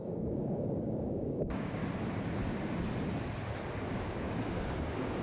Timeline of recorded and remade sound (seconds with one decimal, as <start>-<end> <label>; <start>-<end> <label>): 0.0-1.8 remade; 1.8-3.9 recorded; 3.9-5.2 remade